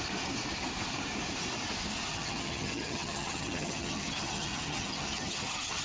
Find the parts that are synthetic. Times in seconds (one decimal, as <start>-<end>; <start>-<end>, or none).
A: 2.1-5.8